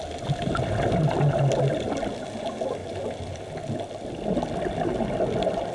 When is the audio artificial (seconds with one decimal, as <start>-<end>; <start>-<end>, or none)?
none